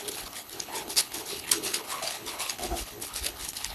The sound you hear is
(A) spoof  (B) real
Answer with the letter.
A